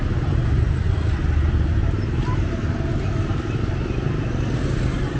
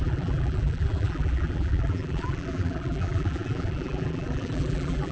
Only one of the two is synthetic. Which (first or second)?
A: second